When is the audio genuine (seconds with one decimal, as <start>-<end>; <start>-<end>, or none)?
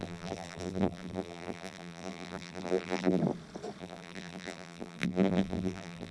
3.2-3.8